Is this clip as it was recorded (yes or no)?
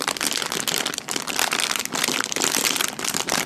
no